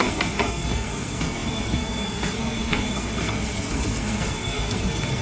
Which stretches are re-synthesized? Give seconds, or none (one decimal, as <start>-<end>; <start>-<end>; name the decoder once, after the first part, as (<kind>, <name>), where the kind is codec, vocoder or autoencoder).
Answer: 0.0-5.2 (codec, SNAC)